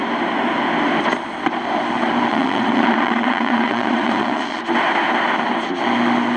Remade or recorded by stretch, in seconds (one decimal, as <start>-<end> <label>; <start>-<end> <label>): 0.0-2.3 recorded; 2.3-4.6 remade; 4.6-6.4 recorded

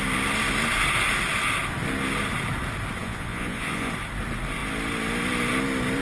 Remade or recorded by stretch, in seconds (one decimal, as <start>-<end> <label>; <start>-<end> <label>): 0.0-3.0 recorded; 3.0-3.9 remade; 3.9-6.0 recorded

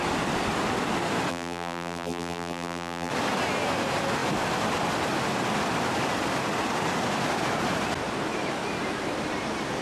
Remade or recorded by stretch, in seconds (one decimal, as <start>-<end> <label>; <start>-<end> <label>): 0.0-1.3 recorded; 1.3-3.1 remade; 3.1-9.8 recorded

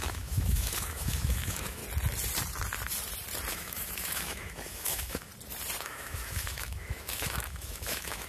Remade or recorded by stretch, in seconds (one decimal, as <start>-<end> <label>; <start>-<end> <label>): 0.0-1.8 remade; 1.8-3.5 recorded; 3.5-5.3 remade; 5.3-5.8 recorded; 5.8-8.3 remade

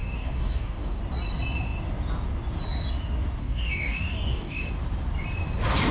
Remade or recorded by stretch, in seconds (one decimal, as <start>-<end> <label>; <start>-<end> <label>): 0.0-1.0 remade; 1.0-3.4 recorded; 3.4-4.7 remade; 4.7-5.9 recorded